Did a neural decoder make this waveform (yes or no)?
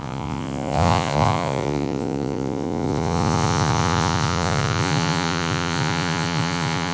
yes